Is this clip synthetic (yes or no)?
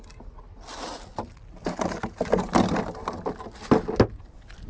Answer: no